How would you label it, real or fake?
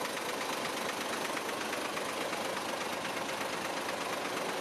real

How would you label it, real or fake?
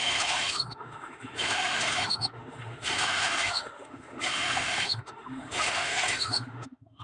fake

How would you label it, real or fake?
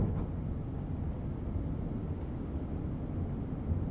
real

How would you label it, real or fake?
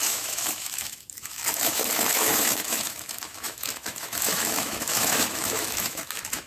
fake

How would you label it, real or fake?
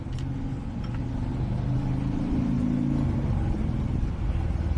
real